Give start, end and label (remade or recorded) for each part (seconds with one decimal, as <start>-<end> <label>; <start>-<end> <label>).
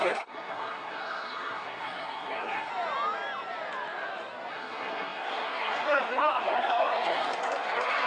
0.0-2.7 remade; 2.7-4.5 recorded; 4.5-8.1 remade